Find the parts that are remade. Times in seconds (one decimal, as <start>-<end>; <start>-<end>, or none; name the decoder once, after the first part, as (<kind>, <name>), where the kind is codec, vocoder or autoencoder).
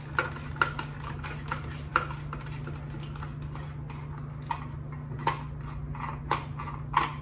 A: none